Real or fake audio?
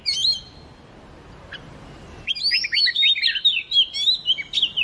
real